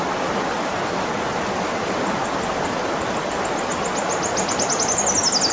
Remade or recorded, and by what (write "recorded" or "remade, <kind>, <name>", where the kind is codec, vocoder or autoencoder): recorded